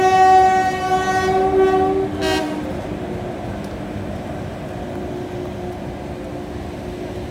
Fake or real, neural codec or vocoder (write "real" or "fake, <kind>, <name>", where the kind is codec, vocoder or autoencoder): real